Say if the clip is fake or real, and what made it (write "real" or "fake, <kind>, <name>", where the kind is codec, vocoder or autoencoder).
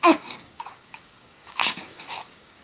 fake, codec, DAC